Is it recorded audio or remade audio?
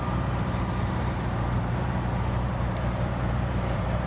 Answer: remade